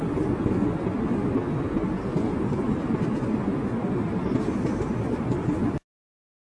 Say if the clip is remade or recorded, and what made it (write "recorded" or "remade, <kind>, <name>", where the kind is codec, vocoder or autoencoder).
recorded